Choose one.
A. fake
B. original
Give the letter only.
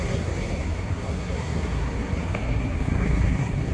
A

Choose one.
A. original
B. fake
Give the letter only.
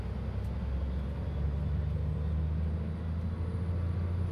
A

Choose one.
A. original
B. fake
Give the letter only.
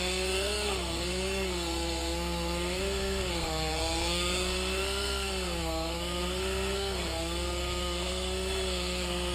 B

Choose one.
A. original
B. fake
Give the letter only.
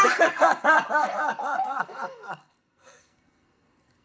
B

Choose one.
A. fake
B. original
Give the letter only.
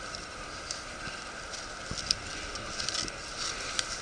B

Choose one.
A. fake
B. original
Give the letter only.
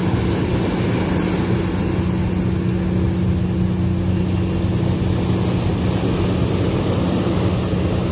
B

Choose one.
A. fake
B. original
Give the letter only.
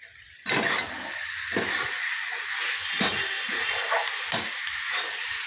B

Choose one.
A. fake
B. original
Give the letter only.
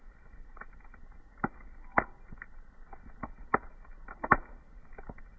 B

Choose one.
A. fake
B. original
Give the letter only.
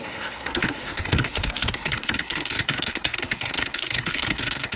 A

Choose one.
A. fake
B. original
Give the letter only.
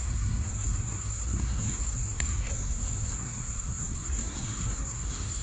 A